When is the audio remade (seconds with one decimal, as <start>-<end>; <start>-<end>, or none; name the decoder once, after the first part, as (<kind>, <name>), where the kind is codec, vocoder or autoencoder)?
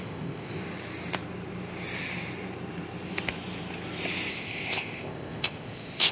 0.0-0.6 (codec, ZipCodec); 4.3-6.1